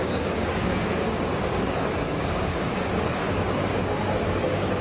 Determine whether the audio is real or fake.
fake